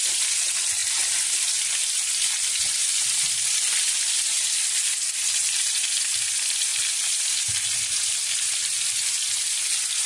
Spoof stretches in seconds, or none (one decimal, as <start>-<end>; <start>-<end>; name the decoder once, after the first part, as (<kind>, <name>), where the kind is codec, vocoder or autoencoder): none